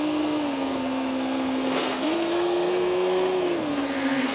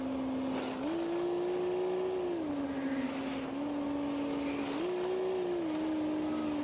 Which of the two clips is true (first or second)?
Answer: second